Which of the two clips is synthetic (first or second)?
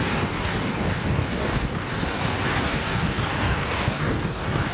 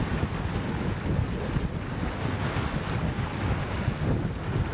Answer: first